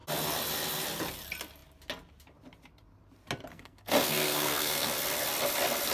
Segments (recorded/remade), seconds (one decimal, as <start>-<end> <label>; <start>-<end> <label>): 0.0-3.5 recorded; 3.5-4.9 remade; 4.9-5.9 recorded